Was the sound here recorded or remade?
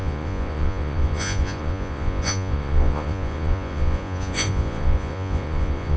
remade